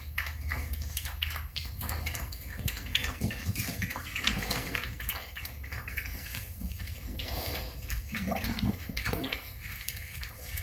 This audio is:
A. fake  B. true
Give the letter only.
A